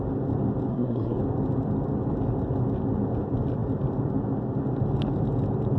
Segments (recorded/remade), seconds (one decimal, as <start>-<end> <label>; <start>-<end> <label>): 0.0-0.7 recorded; 0.7-1.2 remade; 1.2-5.8 recorded